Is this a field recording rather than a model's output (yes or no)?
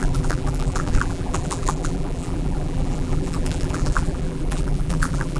no